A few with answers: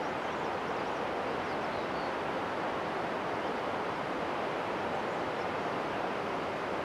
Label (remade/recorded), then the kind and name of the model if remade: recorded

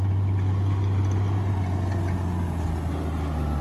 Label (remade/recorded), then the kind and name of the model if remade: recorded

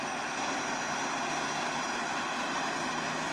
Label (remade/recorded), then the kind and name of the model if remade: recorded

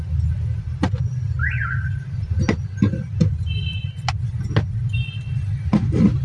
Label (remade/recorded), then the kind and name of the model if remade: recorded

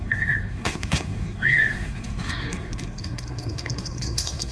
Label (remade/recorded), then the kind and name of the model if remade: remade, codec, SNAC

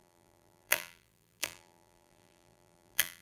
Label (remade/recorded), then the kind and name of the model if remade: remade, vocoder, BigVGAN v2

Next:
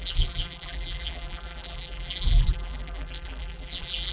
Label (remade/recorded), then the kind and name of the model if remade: remade, vocoder, BigVGAN v2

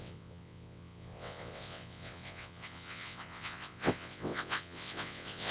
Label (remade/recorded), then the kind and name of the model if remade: remade, vocoder, WaveNeXt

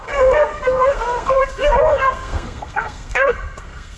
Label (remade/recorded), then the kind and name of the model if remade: remade, codec, SNAC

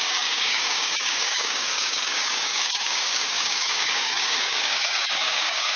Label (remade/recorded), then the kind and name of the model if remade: remade, codec, DAC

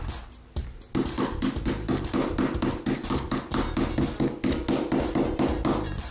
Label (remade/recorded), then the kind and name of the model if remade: recorded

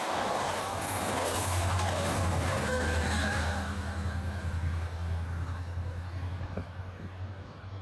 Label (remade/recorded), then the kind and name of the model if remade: remade, codec, DAC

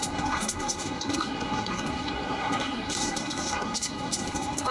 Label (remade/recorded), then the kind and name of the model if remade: remade, codec, SNAC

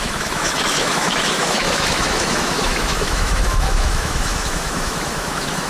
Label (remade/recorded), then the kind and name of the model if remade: remade, autoencoder, DAC-VAE